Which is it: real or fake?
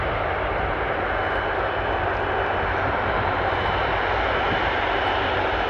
real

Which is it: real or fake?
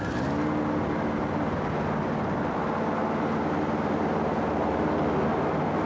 real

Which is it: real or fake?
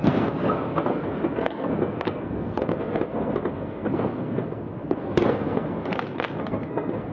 fake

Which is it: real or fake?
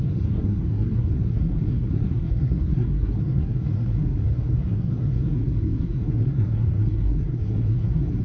fake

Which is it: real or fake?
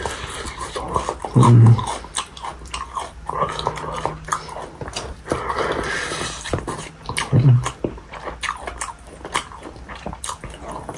real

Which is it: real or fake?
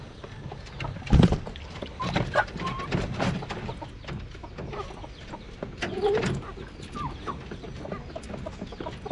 real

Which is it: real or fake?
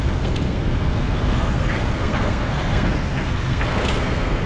fake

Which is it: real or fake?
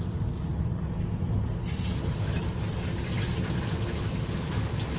real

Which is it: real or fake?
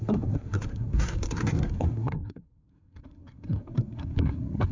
fake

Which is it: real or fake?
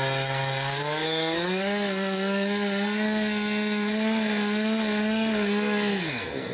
fake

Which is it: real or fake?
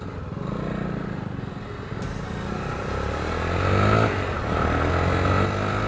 real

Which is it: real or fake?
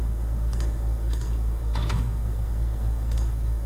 fake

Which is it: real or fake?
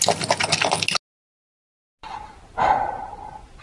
real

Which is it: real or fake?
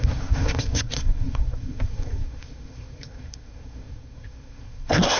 fake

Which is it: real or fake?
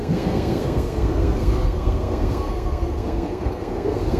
fake